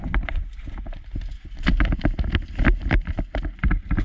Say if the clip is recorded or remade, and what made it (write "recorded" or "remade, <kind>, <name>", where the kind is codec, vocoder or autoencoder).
recorded